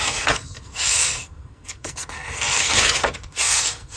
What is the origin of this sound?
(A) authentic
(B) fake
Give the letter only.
B